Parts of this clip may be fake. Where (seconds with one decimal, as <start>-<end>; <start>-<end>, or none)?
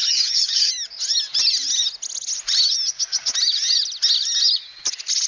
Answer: 0.0-0.7